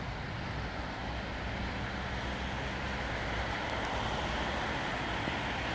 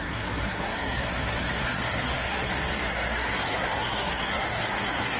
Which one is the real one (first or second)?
first